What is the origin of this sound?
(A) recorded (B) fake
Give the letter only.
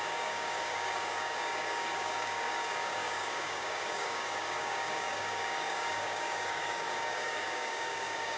B